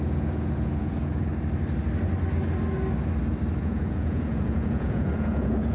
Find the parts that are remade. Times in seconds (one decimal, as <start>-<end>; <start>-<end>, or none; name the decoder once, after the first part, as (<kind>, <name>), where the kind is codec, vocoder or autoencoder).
0.0-1.3 (vocoder, Vocos); 3.6-5.7